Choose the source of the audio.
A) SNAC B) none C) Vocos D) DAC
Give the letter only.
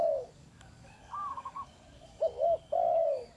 D